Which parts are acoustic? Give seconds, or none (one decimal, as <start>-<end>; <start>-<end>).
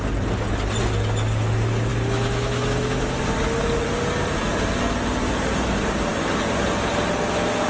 0.0-1.9; 3.2-7.7